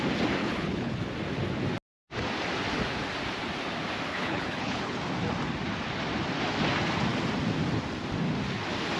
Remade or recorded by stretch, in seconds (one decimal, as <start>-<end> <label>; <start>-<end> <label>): 0.0-0.4 recorded; 0.4-1.0 remade; 1.0-4.1 recorded; 4.1-5.0 remade; 5.0-9.0 recorded